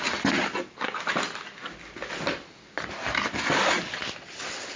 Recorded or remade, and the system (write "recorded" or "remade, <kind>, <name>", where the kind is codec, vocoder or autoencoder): recorded